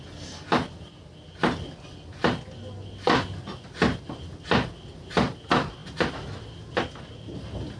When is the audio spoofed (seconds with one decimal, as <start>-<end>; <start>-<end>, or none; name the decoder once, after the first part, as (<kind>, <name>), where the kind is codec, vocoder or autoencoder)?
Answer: none

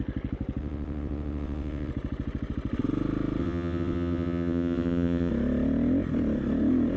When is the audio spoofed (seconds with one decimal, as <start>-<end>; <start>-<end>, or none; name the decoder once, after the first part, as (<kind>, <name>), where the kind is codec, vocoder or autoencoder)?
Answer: 0.6-1.9 (vocoder, WaveNeXt); 3.4-5.3

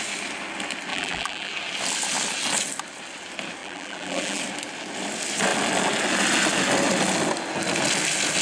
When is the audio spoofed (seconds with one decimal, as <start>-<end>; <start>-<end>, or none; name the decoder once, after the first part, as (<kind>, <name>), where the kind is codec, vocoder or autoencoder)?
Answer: 0.9-1.5 (vocoder, BigVGAN v2); 3.6-4.4

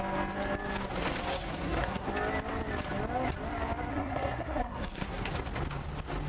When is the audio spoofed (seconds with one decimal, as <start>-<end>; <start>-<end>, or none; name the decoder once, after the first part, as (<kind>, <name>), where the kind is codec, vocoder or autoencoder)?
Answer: 1.3-2.1 (codec, SNAC); 3.9-5.3

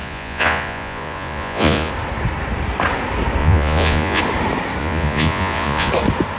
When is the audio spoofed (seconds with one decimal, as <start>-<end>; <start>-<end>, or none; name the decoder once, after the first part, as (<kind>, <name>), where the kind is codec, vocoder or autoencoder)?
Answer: 0.0-1.9 (vocoder, Vocos); 3.4-4.2; 4.8-5.9

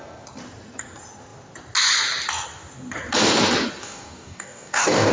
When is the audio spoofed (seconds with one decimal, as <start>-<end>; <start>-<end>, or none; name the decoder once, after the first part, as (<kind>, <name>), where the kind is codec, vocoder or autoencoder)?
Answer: 3.8-5.1 (codec, DAC)

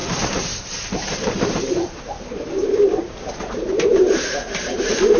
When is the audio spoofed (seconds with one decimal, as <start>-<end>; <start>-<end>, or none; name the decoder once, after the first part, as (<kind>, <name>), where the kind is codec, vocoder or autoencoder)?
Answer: 0.0-2.0 (vocoder, BigVGAN v2); 2.6-4.3